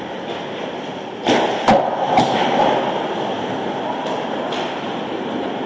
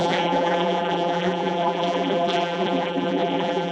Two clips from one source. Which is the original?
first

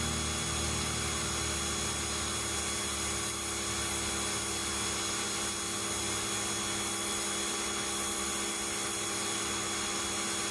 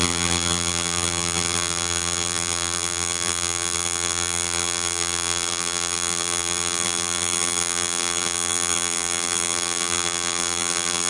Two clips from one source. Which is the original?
first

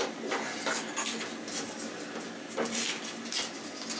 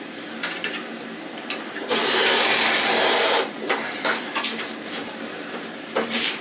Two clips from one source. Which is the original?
first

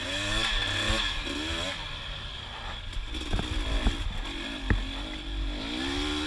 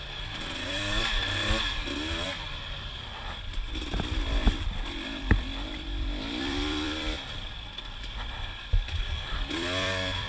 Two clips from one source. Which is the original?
first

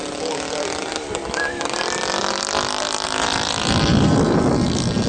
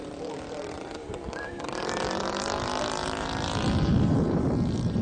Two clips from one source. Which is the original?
first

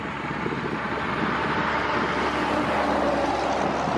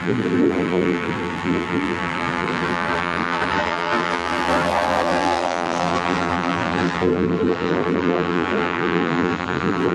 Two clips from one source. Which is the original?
first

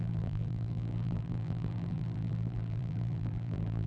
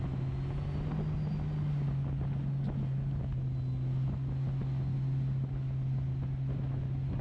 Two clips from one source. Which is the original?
second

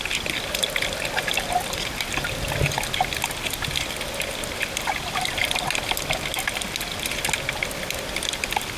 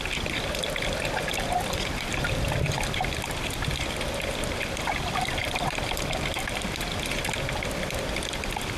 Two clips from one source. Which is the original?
first